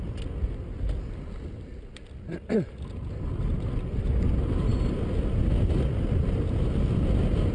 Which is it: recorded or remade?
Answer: recorded